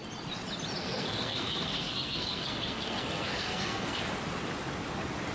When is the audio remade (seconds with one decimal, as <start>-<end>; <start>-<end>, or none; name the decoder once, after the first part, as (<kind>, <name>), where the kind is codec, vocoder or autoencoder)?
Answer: 0.8-4.0 (codec, SNAC)